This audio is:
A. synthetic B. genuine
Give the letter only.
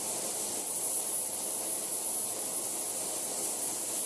B